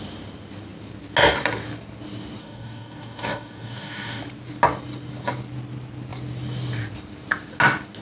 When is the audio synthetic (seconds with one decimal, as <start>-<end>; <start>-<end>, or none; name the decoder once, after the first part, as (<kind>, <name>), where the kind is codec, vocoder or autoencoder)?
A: 2.4-4.2 (codec, DAC)